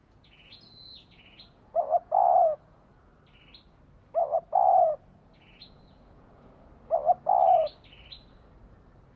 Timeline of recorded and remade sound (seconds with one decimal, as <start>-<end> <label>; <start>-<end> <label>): 0.0-3.1 remade; 3.1-4.2 recorded; 4.2-6.7 remade; 6.7-9.2 recorded